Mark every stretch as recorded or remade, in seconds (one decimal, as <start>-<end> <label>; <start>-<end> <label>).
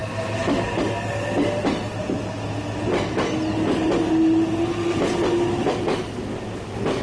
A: 0.0-7.0 recorded